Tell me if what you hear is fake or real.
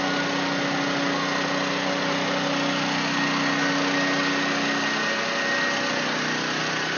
real